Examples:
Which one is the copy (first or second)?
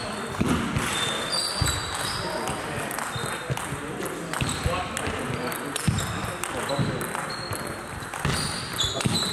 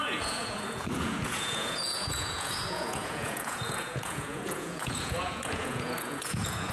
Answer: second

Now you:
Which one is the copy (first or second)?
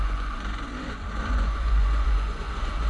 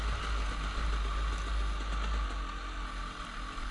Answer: first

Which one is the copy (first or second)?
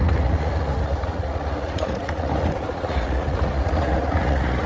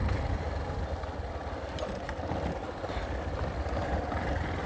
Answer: first